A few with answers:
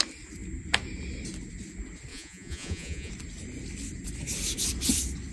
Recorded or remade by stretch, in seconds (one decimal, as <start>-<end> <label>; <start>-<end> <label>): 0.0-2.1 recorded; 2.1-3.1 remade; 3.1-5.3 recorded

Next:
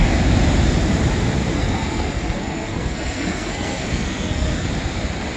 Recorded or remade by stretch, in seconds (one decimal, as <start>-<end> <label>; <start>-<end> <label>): 0.0-1.5 recorded; 1.5-4.7 remade; 4.7-5.4 recorded

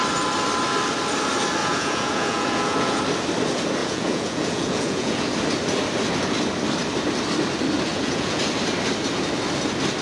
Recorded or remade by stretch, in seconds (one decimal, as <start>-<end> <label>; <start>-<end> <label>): 0.0-1.6 recorded; 1.6-3.0 remade; 3.0-3.8 recorded; 3.8-5.3 remade; 5.3-7.9 recorded; 7.9-8.4 remade; 8.4-10.0 recorded

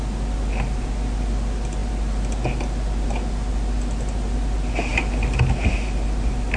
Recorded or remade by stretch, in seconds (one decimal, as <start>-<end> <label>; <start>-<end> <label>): 0.0-6.6 recorded

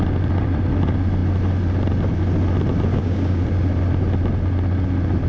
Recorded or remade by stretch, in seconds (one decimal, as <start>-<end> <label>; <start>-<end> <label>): 0.0-2.9 recorded; 2.9-3.4 remade; 3.4-5.3 recorded

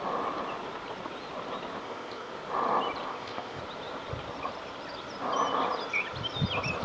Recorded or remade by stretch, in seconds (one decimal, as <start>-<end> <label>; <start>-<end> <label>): 0.0-1.8 recorded; 1.8-2.3 remade; 2.3-3.1 recorded; 3.1-3.6 remade; 3.6-6.8 recorded

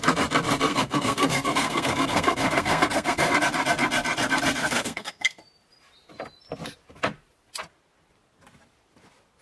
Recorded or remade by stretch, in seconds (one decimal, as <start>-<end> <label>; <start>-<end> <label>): 0.0-0.7 recorded; 0.7-3.3 remade; 3.3-4.6 recorded; 4.6-5.4 remade; 5.4-9.4 recorded

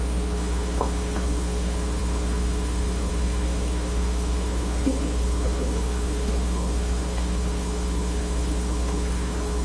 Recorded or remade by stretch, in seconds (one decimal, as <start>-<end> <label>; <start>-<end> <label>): 0.0-9.6 remade